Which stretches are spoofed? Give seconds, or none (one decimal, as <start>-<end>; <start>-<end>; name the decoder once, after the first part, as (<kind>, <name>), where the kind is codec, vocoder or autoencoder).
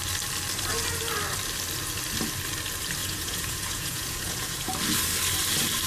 3.0-4.7 (vocoder, Vocos)